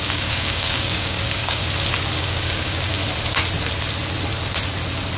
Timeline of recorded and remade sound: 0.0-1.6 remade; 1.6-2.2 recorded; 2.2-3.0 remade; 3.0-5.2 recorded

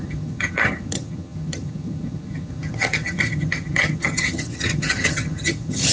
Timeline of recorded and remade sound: 0.0-5.9 remade

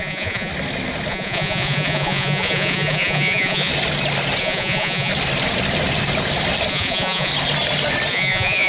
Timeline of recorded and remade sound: 0.0-0.5 remade; 0.5-1.1 recorded; 1.1-3.7 remade; 3.7-4.4 recorded; 4.4-5.1 remade; 5.1-6.7 recorded; 6.7-7.3 remade; 7.3-8.1 recorded; 8.1-8.7 remade

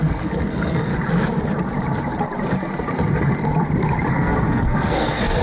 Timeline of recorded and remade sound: 0.0-0.9 remade; 0.9-4.1 recorded; 4.1-5.4 remade

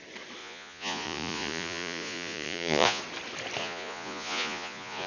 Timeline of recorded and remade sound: 0.0-0.4 recorded; 0.4-3.0 remade; 3.0-3.6 recorded; 3.6-5.1 remade

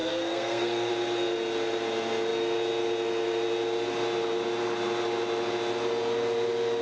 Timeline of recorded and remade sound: 0.0-0.9 remade; 0.9-6.8 recorded